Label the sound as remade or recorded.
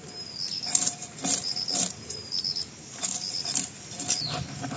recorded